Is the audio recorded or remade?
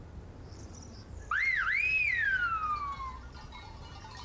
recorded